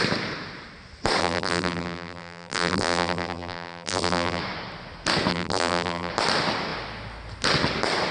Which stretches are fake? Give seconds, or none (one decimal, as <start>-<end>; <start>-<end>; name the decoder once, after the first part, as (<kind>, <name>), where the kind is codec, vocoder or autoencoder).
1.2-4.4 (vocoder, BigVGAN v2); 5.3-6.1